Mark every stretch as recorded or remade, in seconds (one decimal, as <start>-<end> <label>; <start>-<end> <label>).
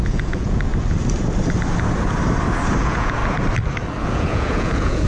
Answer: 0.0-0.7 remade; 0.7-2.8 recorded; 2.8-3.2 remade; 3.2-4.0 recorded; 4.0-5.1 remade